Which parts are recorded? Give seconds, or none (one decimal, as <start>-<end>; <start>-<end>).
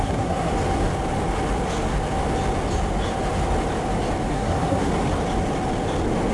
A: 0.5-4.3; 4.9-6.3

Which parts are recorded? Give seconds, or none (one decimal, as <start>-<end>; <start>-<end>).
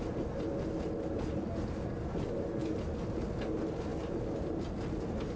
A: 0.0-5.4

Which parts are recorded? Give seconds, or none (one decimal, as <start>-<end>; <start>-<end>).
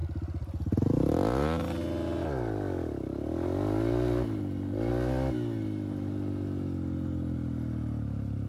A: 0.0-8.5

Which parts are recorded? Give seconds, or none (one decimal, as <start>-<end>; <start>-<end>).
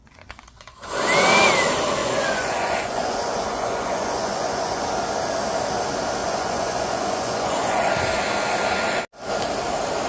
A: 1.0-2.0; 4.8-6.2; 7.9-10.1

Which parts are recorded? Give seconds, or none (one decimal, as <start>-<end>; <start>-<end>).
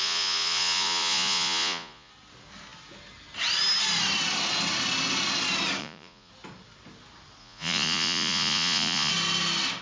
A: 2.1-5.8; 6.3-7.4; 9.1-9.8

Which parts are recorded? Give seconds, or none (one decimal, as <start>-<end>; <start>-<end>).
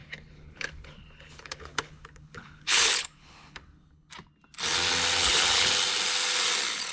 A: 4.1-5.2; 5.7-6.9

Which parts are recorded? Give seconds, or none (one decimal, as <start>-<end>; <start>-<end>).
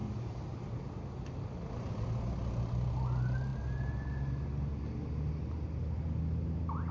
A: 0.0-6.9